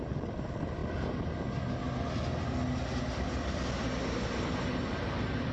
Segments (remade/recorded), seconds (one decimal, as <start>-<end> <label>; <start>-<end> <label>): 0.0-5.5 recorded